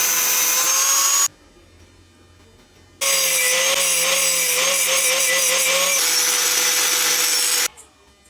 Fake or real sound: real